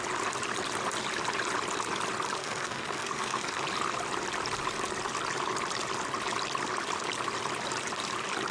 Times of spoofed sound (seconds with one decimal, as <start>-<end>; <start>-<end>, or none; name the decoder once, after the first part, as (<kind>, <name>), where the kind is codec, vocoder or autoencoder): 2.4-3.6 (codec, SNAC)